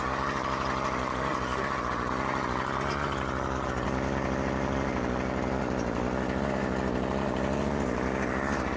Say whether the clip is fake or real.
real